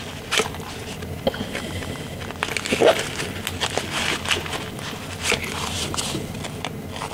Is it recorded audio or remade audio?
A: recorded